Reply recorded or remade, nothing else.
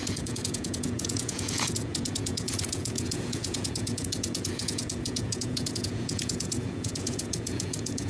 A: remade